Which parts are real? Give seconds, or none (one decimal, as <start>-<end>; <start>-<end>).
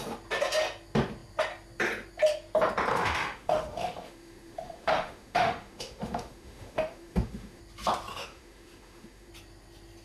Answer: 0.0-2.9; 7.6-8.1; 9.3-10.0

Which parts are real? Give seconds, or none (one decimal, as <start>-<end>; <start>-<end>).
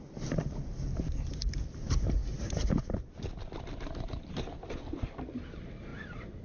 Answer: 0.0-2.2; 4.7-5.9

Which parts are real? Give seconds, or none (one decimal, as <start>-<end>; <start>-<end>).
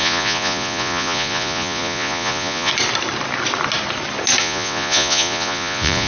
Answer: 2.7-4.4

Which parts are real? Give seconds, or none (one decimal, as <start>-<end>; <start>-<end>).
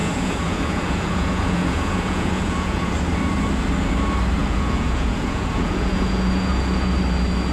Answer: 2.9-4.4; 7.0-7.5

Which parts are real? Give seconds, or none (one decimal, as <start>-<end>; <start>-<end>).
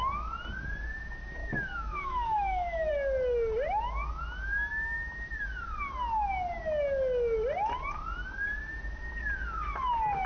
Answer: 0.0-1.4; 2.9-10.3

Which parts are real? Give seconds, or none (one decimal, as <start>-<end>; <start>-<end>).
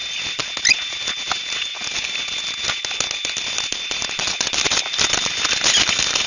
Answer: 0.0-6.3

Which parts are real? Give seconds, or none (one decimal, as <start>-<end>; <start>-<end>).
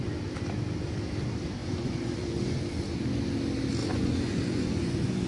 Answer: 0.0-1.6; 2.6-3.8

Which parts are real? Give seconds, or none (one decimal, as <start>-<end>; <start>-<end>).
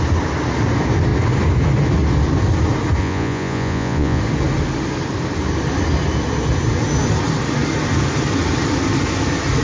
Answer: 0.0-3.0; 4.2-9.6